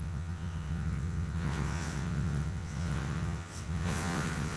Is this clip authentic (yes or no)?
no